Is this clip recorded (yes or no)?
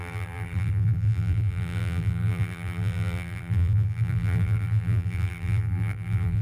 no